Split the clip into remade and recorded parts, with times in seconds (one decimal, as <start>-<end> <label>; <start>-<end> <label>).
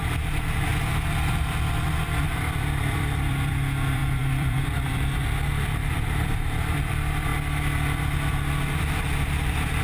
0.0-0.7 remade; 0.7-1.3 recorded; 1.3-7.3 remade; 7.3-9.0 recorded; 9.0-9.8 remade